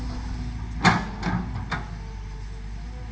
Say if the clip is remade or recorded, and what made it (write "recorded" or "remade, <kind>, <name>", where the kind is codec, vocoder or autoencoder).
recorded